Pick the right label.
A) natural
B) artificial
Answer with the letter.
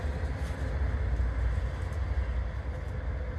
A